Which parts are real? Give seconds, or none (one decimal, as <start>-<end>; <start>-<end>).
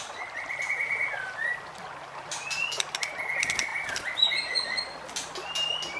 0.0-6.0